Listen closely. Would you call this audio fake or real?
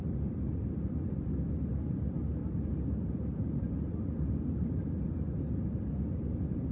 real